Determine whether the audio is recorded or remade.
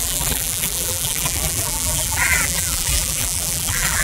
remade